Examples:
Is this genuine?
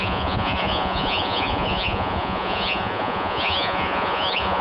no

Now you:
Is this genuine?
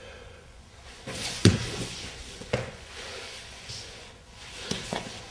no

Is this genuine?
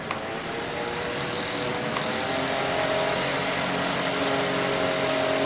yes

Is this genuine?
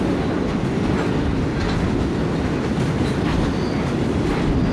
yes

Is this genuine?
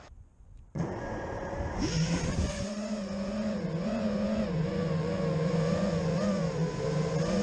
no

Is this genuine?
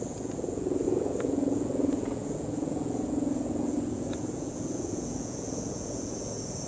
no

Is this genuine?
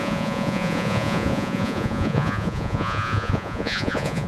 no